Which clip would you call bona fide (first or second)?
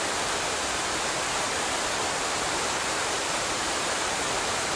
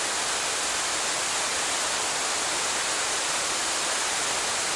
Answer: second